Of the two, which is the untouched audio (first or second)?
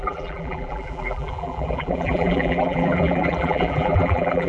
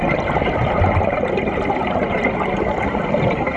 second